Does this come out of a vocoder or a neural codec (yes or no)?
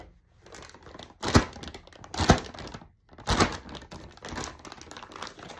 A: no